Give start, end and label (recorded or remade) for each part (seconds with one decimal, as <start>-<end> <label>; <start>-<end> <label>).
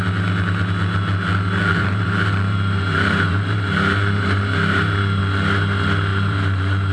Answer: 0.0-1.7 recorded; 1.7-5.2 remade; 5.2-6.1 recorded; 6.1-6.9 remade